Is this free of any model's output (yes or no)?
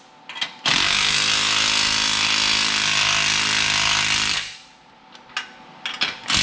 yes